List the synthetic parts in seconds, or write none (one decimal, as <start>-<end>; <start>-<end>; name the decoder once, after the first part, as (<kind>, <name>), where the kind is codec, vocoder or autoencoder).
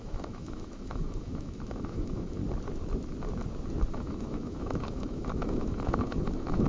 0.0-2.4 (autoencoder, DAC-VAE); 3.9-6.7